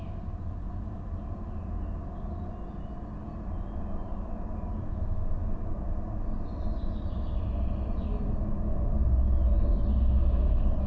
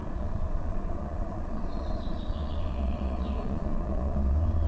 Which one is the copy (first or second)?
second